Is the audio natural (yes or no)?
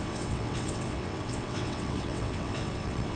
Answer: no